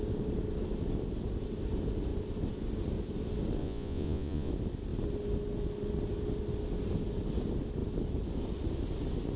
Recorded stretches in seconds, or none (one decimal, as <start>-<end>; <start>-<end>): 0.0-3.6; 4.5-9.4